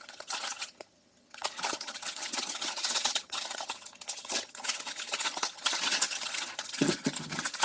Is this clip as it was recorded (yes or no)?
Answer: no